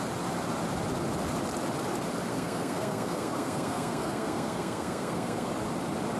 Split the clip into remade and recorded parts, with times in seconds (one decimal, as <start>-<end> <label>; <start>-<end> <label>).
0.0-2.3 recorded; 2.3-5.5 remade; 5.5-6.2 recorded